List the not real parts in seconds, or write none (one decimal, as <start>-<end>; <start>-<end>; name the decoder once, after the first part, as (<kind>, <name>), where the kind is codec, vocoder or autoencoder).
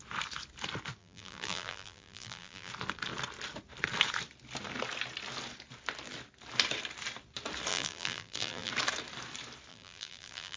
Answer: 1.0-2.7 (vocoder, BigVGAN v2); 7.7-8.7; 9.7-10.6